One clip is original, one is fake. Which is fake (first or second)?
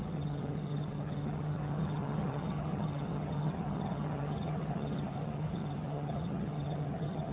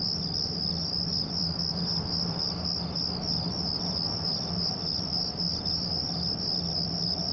first